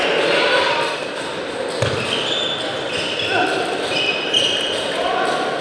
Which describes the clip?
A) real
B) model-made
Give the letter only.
A